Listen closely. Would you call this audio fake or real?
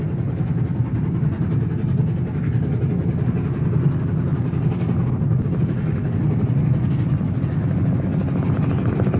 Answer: real